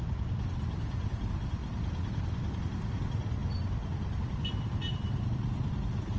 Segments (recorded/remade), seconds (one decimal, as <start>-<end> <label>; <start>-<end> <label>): 0.0-1.6 remade; 1.6-2.6 recorded; 2.6-3.4 remade; 3.4-4.2 recorded; 4.2-6.2 remade